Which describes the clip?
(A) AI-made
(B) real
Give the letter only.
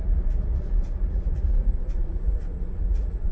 A